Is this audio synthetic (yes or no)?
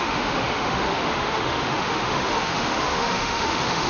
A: yes